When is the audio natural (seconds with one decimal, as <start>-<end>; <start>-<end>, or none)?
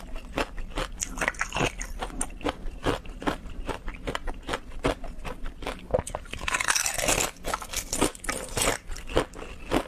0.0-2.8; 3.9-9.9